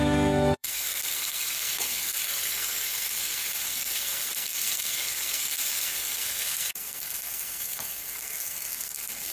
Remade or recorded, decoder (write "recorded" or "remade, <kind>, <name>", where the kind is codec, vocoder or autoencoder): remade, codec, SNAC